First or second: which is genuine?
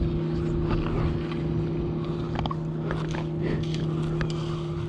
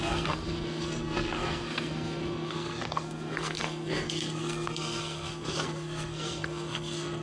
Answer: first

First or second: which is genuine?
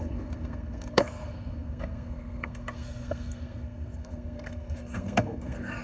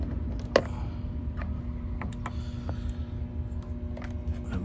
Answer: second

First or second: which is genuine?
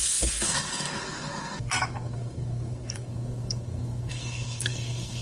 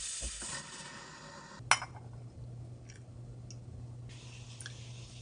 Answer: second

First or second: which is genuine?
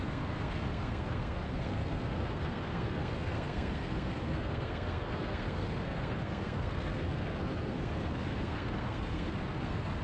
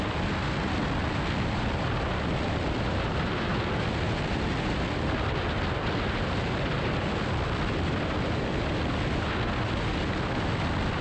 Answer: second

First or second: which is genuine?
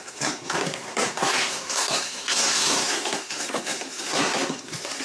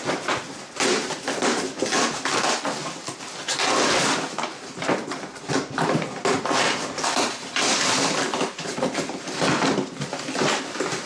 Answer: second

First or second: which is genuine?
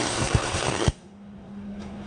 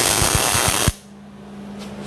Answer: second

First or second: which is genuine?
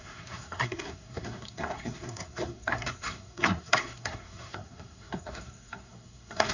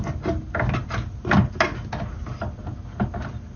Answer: second